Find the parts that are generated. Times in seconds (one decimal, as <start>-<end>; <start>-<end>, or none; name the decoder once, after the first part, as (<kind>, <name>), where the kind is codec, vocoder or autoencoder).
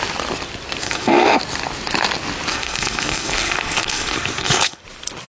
0.8-1.4 (codec, SNAC); 2.5-4.8